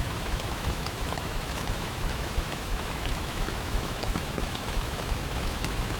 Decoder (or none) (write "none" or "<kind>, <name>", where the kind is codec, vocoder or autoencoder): autoencoder, DAC-VAE